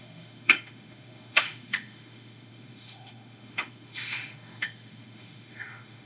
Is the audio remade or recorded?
remade